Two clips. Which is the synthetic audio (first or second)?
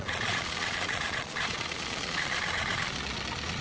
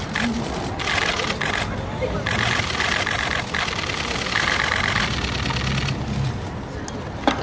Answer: first